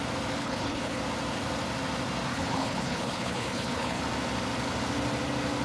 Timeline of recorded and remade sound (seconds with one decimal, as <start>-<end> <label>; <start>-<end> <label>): 0.0-0.4 recorded; 0.4-1.0 remade; 1.0-2.3 recorded; 2.3-4.0 remade; 4.0-5.6 recorded